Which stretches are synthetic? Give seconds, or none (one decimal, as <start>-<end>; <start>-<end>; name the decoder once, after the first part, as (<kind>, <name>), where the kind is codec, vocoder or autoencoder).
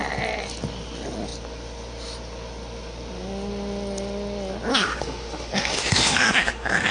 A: 4.7-6.9 (autoencoder, DAC-VAE)